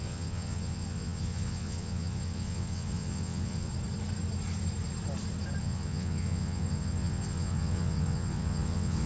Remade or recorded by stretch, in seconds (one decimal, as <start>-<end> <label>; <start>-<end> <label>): 0.0-3.7 remade; 3.7-5.6 recorded; 5.6-9.1 remade

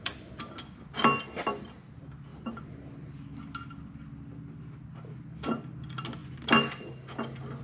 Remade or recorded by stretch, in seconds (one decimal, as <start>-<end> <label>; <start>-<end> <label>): 0.0-7.6 recorded

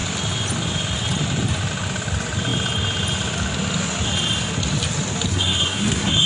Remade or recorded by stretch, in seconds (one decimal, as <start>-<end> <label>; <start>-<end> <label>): 0.0-5.3 recorded; 5.3-6.3 remade

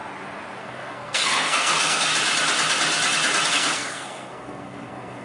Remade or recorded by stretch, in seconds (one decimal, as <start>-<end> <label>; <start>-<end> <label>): 0.0-0.6 recorded; 0.6-2.1 remade; 2.1-3.5 recorded; 3.5-5.2 remade

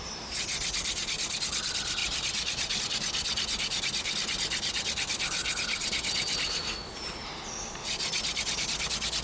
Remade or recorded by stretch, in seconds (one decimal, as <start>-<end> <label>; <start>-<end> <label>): 0.0-9.2 recorded

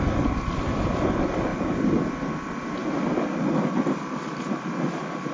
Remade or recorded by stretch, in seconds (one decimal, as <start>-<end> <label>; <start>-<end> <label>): 0.0-5.3 recorded

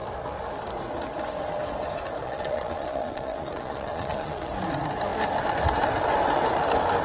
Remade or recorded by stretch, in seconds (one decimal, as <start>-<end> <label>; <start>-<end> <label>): 0.0-2.2 recorded; 2.2-4.5 remade; 4.5-7.0 recorded